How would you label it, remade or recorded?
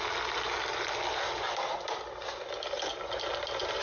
recorded